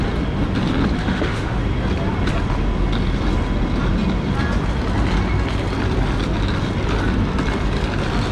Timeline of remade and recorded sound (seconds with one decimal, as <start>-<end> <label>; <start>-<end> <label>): 0.0-1.0 recorded; 1.0-1.6 remade; 1.6-8.3 recorded